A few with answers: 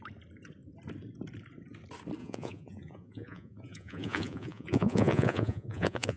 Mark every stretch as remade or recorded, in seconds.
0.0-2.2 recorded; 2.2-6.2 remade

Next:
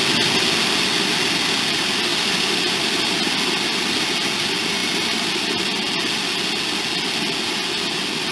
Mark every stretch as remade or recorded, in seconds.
0.0-2.1 recorded; 2.1-3.2 remade; 3.2-4.8 recorded; 4.8-5.9 remade; 5.9-8.3 recorded